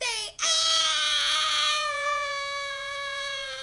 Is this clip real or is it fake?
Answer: fake